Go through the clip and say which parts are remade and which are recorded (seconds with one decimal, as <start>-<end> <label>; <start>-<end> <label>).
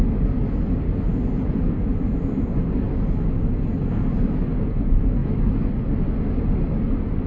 0.0-7.3 recorded